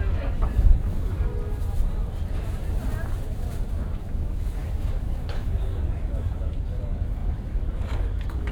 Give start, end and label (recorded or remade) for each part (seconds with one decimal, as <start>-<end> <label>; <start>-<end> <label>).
0.0-1.3 remade; 1.3-4.0 recorded; 4.0-8.5 remade